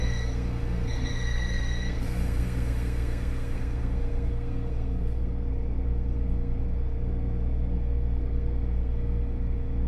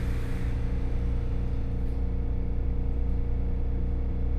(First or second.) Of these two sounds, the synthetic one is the first